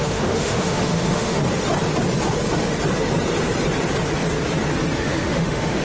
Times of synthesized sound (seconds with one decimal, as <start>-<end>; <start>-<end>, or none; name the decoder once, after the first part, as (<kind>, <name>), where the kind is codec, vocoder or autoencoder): 0.0-1.4 (autoencoder, DAC-VAE); 4.9-5.8